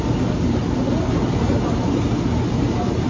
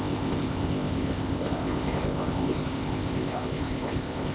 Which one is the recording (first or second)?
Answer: first